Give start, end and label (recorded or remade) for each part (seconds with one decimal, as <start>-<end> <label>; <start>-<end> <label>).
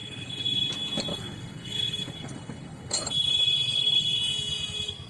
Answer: 0.0-0.7 remade; 0.7-1.1 recorded; 1.1-4.2 remade; 4.2-5.1 recorded